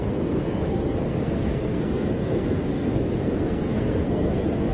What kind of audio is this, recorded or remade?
remade